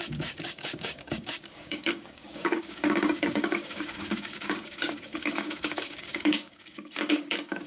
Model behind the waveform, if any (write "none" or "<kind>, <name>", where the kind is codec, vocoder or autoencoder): codec, DAC